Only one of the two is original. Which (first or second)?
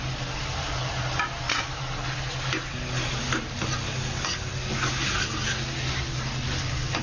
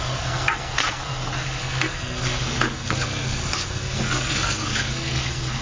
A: first